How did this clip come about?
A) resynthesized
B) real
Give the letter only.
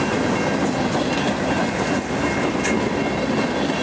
B